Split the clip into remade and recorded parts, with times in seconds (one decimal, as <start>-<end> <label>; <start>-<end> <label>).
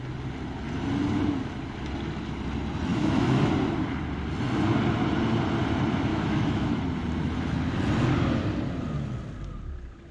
0.0-2.9 recorded; 2.9-3.5 remade; 3.5-6.1 recorded; 6.1-6.8 remade; 6.8-10.1 recorded